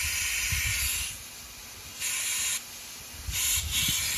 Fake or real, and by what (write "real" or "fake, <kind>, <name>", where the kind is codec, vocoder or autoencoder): real